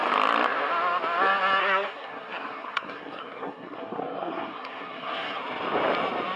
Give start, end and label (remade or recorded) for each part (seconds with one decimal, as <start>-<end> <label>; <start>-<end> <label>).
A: 0.0-1.6 recorded; 1.6-5.4 remade; 5.4-6.4 recorded